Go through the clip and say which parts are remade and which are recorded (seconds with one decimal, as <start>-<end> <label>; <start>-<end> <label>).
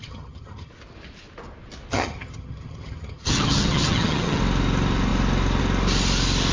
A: 0.0-0.7 remade; 0.7-1.9 recorded; 1.9-4.4 remade; 4.4-6.5 recorded